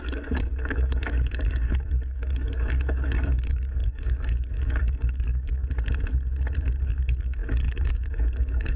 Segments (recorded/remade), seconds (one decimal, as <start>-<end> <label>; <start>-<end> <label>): 0.0-5.6 remade; 5.6-6.8 recorded; 6.8-8.8 remade